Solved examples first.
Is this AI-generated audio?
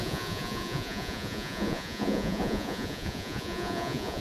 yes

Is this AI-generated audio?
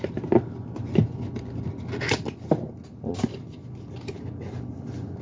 no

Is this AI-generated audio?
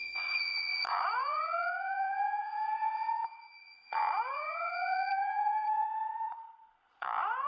yes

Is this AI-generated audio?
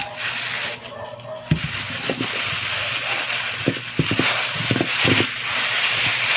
no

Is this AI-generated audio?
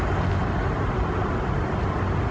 no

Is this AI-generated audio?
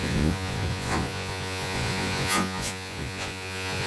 yes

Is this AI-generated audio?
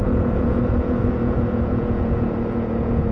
yes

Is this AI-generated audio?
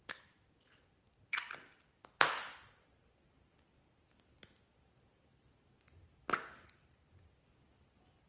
no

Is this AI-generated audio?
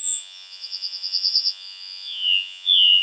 yes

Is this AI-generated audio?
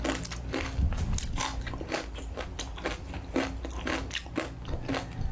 no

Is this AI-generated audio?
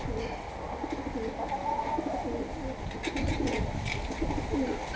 no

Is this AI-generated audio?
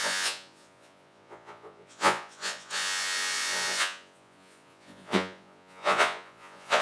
yes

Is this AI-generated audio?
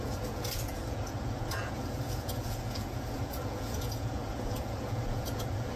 yes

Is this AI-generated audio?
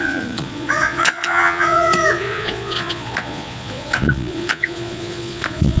yes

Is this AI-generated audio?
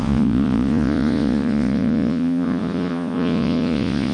yes